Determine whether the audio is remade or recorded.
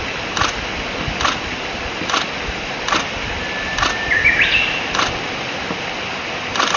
recorded